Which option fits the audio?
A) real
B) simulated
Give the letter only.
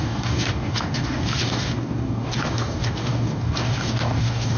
B